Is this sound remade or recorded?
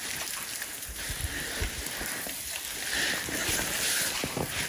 recorded